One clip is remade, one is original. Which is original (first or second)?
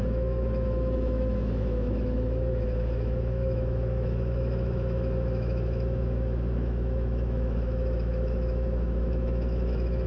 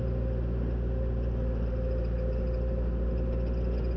second